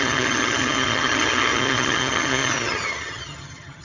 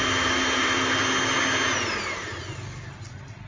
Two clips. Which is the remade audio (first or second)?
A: first